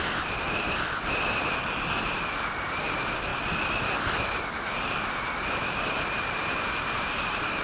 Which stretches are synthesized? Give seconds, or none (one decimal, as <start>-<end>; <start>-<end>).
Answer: none